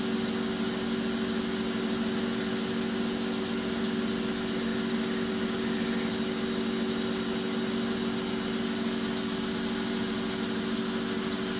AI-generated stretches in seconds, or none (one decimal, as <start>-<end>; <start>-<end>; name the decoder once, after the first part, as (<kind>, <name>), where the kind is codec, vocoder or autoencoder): none